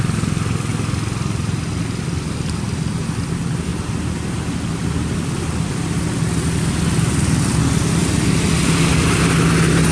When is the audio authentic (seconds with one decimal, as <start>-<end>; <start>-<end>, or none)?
0.0-9.9